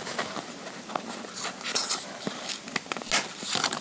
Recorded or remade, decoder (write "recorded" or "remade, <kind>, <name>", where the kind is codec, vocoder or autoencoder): recorded